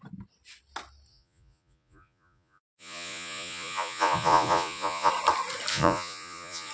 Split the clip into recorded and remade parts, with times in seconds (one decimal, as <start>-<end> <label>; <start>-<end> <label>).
0.0-1.1 recorded; 1.1-5.1 remade; 5.1-5.7 recorded; 5.7-6.7 remade